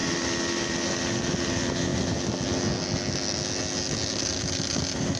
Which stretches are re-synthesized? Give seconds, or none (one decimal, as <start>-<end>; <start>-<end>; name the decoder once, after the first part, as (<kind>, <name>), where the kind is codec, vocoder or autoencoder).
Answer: none

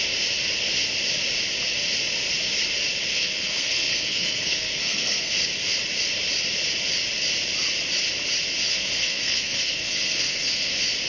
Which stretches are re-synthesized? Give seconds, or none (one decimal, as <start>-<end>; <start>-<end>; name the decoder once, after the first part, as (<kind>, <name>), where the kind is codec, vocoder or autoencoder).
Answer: 3.1-5.3 (codec, SNAC); 8.7-10.7

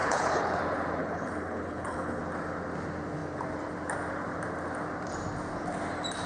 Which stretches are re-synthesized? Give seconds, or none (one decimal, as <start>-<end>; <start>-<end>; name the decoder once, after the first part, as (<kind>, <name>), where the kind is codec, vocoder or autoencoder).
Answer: 0.0-0.6 (codec, HILCodec); 1.0-2.2

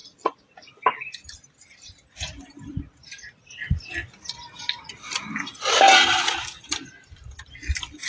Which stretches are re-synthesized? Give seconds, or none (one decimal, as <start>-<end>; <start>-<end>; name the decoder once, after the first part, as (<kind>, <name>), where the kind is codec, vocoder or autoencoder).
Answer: 0.0-0.7 (vocoder, Vocos)